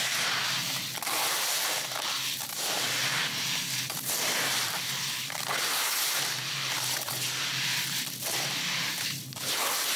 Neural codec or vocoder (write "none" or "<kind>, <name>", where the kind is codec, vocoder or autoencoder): vocoder, BigVGAN v2